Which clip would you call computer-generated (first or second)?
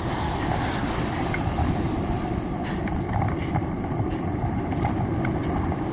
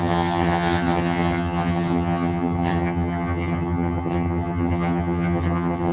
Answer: second